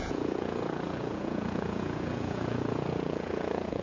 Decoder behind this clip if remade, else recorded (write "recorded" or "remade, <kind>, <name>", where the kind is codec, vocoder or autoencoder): remade, vocoder, Vocos